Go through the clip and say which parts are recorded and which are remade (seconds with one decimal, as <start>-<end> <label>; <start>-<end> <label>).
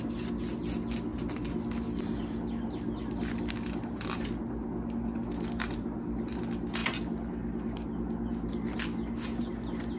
0.0-10.0 recorded